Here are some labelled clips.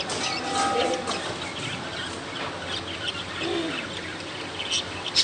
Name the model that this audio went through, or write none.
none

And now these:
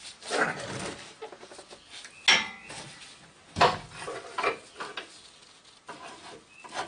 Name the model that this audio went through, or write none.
none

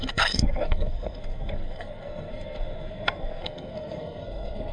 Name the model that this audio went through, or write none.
codec, SNAC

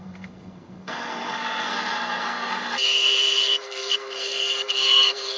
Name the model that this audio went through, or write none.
codec, SNAC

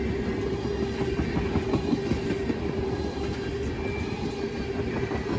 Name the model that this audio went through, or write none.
none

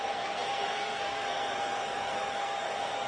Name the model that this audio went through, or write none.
codec, SNAC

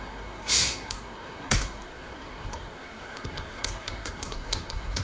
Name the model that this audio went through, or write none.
codec, SNAC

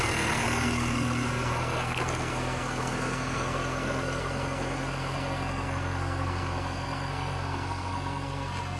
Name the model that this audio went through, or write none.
codec, SNAC